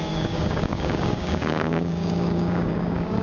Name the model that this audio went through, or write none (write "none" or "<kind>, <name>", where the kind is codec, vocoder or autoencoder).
codec, DAC